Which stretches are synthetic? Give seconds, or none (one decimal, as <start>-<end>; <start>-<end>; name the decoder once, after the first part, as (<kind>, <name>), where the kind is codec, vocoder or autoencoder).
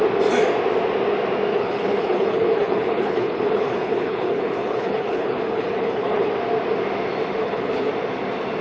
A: 1.5-6.3 (codec, HILCodec); 7.4-7.9